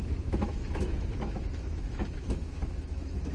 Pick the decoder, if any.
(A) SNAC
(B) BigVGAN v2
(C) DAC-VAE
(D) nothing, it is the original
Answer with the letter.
C